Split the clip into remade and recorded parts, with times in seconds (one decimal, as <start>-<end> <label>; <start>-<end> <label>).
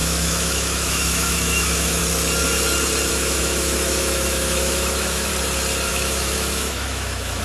0.0-2.0 remade; 2.0-3.1 recorded; 3.1-5.3 remade; 5.3-5.9 recorded; 5.9-7.4 remade